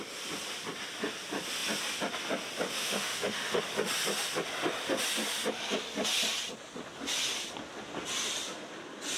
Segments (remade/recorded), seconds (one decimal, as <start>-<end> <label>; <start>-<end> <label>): 0.0-2.8 recorded; 2.8-3.6 remade; 3.6-9.2 recorded

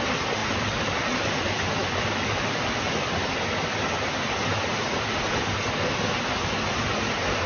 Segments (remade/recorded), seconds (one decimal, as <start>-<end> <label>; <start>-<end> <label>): 0.0-7.5 recorded

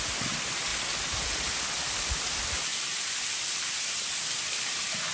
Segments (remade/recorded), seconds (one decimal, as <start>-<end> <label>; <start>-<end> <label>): 0.0-5.1 recorded

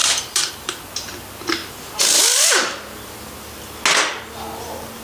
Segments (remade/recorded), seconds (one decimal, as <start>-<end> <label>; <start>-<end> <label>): 0.0-0.5 remade; 0.5-5.0 recorded

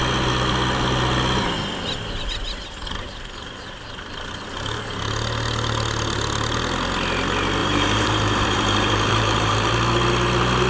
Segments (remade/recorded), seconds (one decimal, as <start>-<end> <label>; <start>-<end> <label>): 0.0-7.6 recorded; 7.6-9.7 remade; 9.7-10.7 recorded